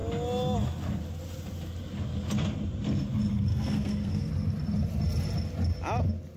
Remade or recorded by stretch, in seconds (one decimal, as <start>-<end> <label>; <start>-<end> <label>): 0.0-3.5 recorded; 3.5-4.3 remade; 4.3-6.4 recorded